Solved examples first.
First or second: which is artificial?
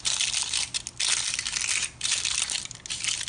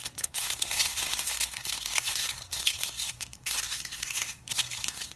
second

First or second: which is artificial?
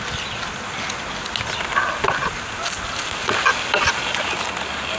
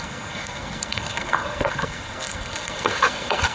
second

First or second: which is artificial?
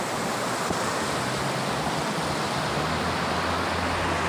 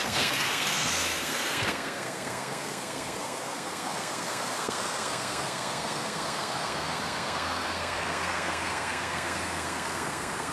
second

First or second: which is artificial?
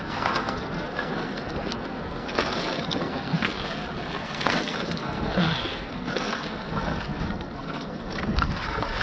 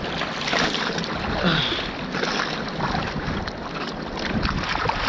first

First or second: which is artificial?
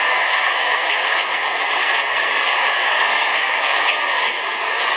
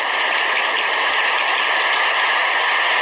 first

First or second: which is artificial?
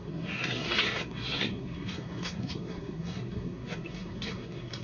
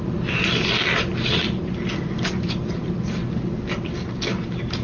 first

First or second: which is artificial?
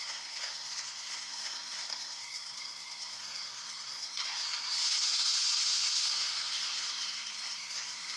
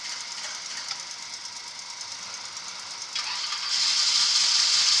first